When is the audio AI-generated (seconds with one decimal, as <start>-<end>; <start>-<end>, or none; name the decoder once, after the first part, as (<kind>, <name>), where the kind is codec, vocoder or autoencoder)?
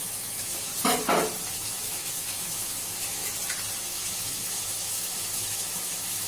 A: 0.0-0.7 (autoencoder, DAC-VAE); 1.5-3.2; 3.8-6.3